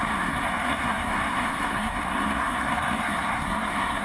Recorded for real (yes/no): no